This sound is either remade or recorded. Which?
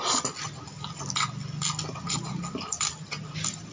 recorded